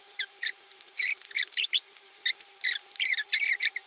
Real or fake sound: fake